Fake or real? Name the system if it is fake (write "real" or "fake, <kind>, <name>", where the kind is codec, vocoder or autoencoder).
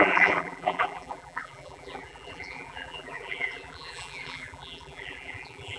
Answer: fake, vocoder, BigVGAN v2